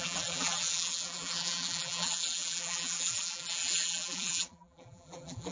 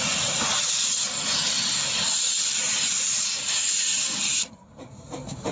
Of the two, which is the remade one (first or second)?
first